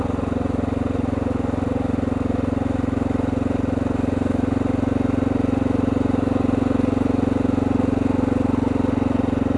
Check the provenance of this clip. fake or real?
real